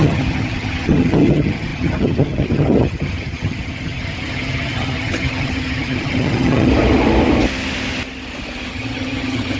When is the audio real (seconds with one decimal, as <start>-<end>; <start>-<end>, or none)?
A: 6.7-8.7